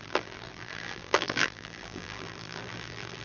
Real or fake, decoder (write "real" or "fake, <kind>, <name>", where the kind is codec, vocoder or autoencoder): fake, vocoder, BigVGAN v2